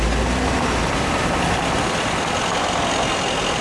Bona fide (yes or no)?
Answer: yes